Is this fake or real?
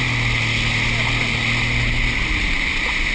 real